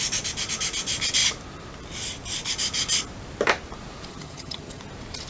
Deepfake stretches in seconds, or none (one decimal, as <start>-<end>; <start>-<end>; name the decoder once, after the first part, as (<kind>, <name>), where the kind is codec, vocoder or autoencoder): 4.1-4.8 (vocoder, HiFi-GAN)